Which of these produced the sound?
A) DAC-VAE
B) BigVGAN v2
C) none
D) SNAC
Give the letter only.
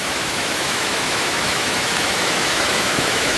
A